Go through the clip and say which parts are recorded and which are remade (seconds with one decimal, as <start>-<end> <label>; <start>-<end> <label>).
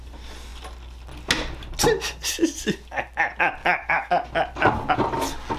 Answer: 0.0-3.6 recorded; 3.6-4.1 remade; 4.1-5.6 recorded